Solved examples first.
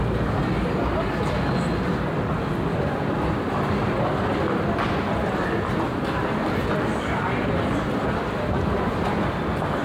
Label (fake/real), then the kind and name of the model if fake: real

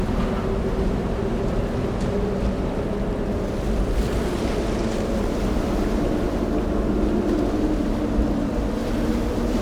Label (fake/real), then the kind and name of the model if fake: real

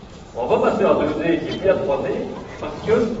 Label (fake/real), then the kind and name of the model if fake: fake, vocoder, BigVGAN v2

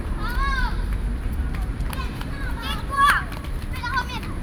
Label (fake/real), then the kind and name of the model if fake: fake, vocoder, BigVGAN v2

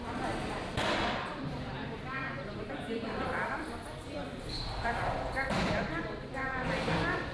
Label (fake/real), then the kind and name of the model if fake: fake, vocoder, BigVGAN v2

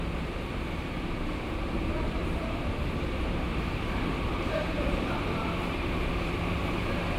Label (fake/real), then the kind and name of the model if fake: fake, vocoder, BigVGAN v2